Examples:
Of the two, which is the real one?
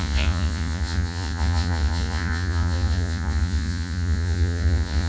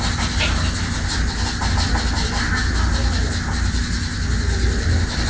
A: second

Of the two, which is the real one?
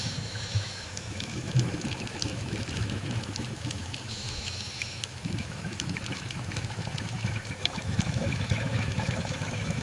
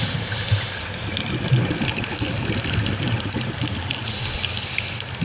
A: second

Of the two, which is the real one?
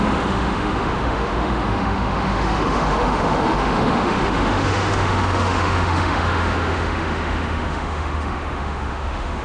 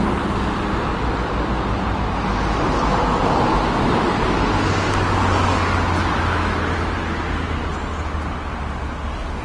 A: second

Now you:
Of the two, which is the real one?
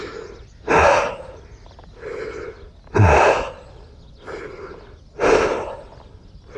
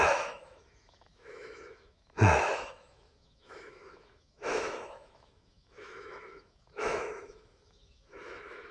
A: first